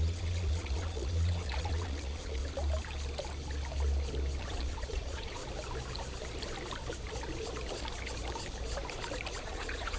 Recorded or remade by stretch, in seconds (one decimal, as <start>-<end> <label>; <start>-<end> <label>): 0.0-2.4 remade; 2.4-4.4 recorded; 4.4-5.4 remade; 5.4-9.4 recorded; 9.4-10.0 remade

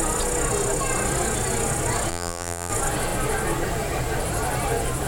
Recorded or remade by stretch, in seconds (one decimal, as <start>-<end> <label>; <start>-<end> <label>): 0.0-2.1 recorded; 2.1-2.7 remade; 2.7-5.1 recorded